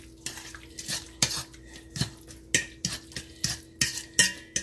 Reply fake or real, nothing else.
real